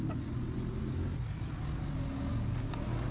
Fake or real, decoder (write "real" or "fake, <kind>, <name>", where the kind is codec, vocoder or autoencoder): real